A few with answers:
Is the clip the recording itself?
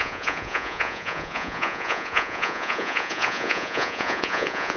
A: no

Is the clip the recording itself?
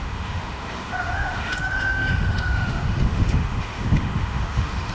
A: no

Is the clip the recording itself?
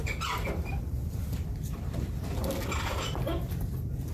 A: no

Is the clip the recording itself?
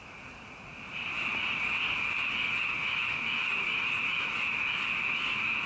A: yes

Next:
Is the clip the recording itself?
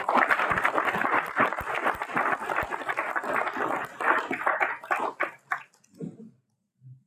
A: yes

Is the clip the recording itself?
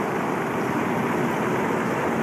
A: yes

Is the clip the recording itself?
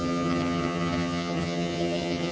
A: no